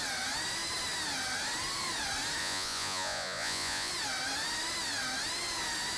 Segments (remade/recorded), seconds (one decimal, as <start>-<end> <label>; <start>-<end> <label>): 0.0-2.4 recorded; 2.4-3.9 remade; 3.9-6.0 recorded